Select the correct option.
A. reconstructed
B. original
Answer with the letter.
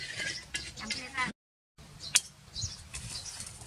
B